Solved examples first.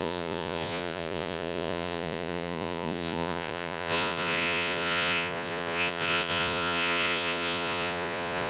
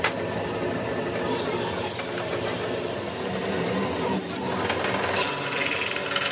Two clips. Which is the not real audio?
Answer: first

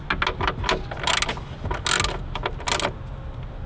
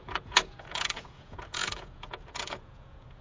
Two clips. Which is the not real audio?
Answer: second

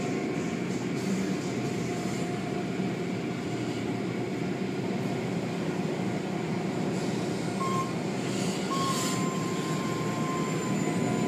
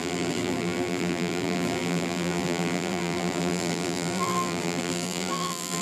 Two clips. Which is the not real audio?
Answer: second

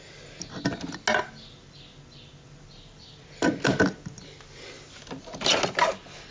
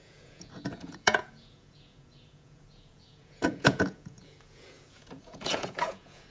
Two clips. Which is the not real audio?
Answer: second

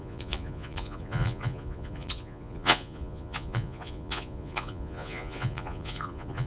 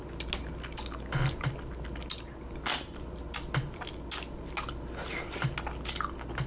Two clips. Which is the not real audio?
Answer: first